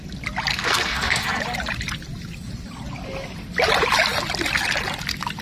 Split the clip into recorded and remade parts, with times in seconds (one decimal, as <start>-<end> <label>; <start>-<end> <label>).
0.0-0.5 recorded; 0.5-1.4 remade; 1.4-5.4 recorded